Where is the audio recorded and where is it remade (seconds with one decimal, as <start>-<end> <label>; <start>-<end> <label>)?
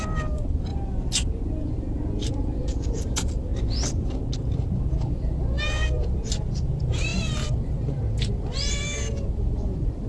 0.0-0.7 remade; 0.7-2.4 recorded; 2.4-3.5 remade; 3.5-5.1 recorded; 5.1-10.1 remade